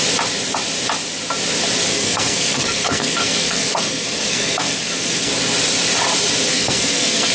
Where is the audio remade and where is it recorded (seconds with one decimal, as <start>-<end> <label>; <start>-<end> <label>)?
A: 0.0-1.9 recorded; 1.9-5.3 remade; 5.3-6.5 recorded; 6.5-7.3 remade